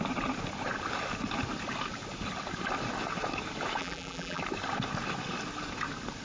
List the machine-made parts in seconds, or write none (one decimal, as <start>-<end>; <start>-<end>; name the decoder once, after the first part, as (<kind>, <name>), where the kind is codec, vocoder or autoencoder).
3.8-4.4 (vocoder, BigVGAN v2)